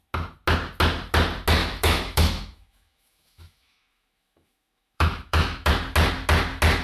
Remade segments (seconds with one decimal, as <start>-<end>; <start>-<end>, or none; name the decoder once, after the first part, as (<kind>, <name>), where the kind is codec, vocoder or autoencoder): 1.6-5.7 (autoencoder, DAC-VAE)